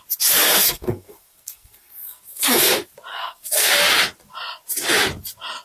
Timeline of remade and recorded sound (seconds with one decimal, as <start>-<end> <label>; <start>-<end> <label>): 0.0-0.5 recorded; 0.5-2.7 remade; 2.7-3.1 recorded; 3.1-3.7 remade; 3.7-5.6 recorded